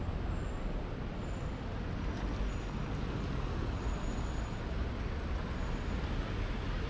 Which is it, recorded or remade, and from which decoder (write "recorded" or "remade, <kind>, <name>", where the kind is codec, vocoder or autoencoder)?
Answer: recorded